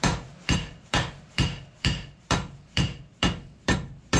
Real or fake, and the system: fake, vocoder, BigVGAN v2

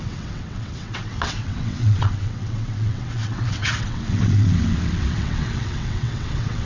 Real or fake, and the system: fake, vocoder, WaveNeXt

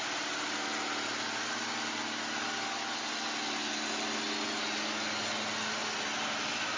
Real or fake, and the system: real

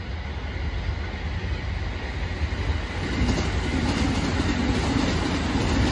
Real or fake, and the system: real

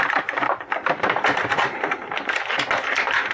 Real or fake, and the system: fake, vocoder, BigVGAN v2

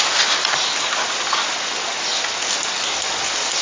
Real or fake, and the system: real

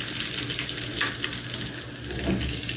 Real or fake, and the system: real